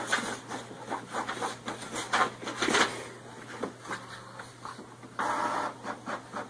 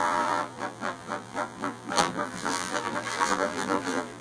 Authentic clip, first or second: first